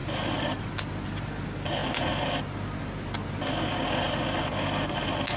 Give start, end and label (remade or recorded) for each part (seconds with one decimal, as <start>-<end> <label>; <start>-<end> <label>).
0.0-5.4 recorded